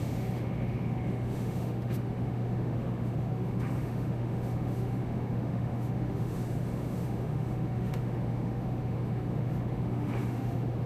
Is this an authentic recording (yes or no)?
no